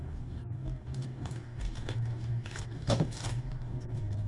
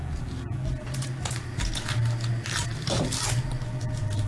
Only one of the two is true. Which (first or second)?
second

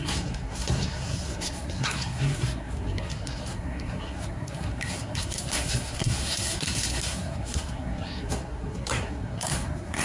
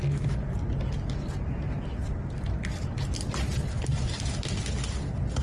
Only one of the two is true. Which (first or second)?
second